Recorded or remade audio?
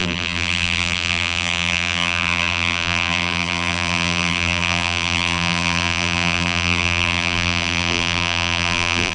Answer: remade